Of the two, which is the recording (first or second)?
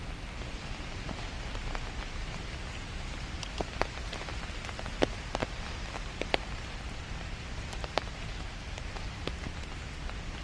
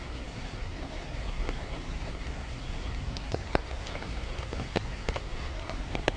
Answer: first